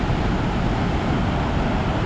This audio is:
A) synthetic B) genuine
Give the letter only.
B